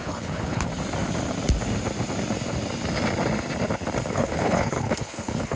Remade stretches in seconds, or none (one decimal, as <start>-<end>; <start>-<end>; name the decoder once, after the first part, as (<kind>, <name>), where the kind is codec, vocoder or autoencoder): 0.0-0.7 (codec, HILCodec); 4.1-5.6